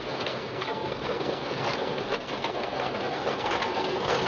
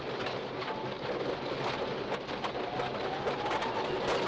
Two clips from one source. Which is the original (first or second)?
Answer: second